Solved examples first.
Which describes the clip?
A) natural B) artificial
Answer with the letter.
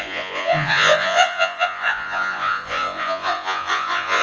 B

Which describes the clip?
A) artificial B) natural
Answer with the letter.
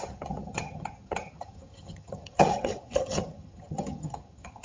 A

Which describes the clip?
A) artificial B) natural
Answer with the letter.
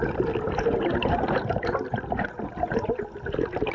B